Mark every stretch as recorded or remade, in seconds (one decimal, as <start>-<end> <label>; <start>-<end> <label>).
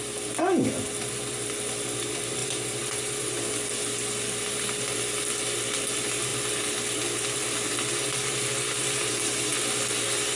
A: 0.0-10.4 recorded